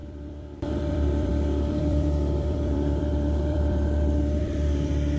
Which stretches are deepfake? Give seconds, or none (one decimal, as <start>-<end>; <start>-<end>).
0.0-5.2